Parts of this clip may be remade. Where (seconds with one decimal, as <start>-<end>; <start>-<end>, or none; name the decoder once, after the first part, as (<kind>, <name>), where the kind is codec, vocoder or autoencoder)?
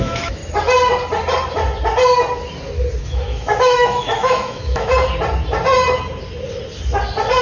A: 0.0-0.4 (autoencoder, DAC-VAE); 3.0-4.9